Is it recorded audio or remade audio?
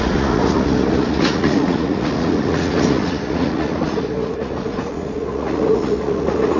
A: remade